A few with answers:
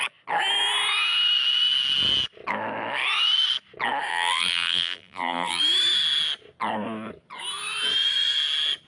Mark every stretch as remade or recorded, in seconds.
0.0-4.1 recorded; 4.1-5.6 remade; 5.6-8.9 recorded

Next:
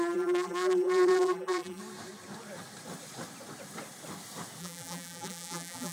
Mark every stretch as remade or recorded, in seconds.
0.0-1.8 remade; 1.8-4.6 recorded; 4.6-5.9 remade

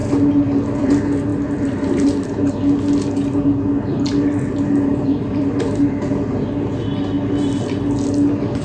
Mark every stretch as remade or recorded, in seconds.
0.0-0.9 remade; 0.9-1.3 recorded; 1.3-2.5 remade; 2.5-4.9 recorded; 4.9-6.1 remade; 6.1-8.6 recorded

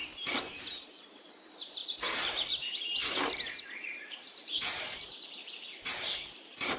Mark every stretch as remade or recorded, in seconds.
0.0-1.3 recorded; 1.3-6.8 remade